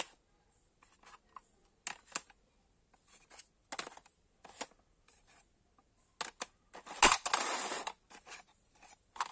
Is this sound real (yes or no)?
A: yes